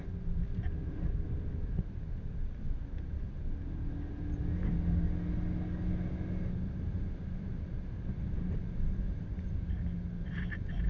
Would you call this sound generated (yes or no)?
no